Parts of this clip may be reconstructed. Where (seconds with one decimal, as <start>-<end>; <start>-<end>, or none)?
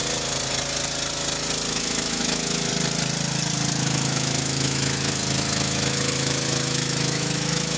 1.7-2.7; 3.7-7.8